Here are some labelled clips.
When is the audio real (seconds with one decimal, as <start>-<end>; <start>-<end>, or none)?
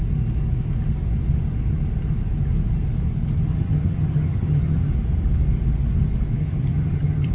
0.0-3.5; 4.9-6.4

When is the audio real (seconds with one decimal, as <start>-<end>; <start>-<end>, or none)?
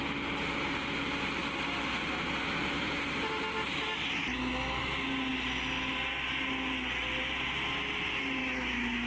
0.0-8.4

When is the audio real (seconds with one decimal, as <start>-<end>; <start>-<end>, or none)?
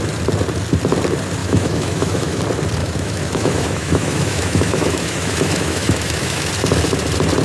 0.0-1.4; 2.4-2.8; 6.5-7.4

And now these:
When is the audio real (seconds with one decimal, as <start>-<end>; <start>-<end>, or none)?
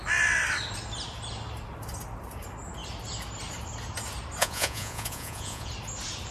0.0-4.4; 5.7-6.3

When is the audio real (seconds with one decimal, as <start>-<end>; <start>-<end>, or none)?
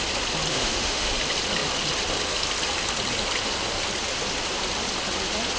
0.0-0.5; 1.1-5.6